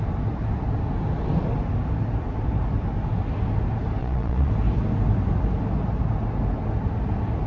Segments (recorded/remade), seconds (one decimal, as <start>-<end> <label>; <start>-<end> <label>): 0.0-4.0 recorded; 4.0-4.5 remade; 4.5-7.5 recorded